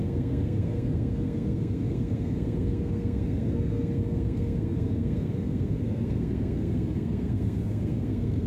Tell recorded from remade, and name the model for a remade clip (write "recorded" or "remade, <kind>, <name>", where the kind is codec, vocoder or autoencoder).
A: remade, codec, SNAC